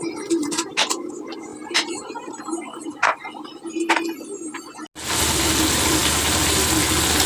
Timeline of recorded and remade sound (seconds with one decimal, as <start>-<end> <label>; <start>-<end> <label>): 0.0-7.3 recorded